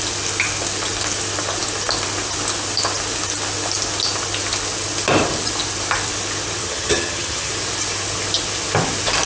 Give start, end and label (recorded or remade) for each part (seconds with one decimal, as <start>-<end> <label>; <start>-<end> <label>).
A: 0.0-6.6 recorded; 6.6-7.5 remade; 7.5-9.3 recorded